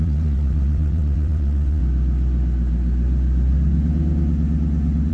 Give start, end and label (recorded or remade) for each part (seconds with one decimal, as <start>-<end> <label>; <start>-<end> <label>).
0.0-1.8 remade; 1.8-5.1 recorded